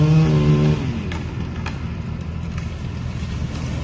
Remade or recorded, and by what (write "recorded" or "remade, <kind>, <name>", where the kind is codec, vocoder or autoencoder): recorded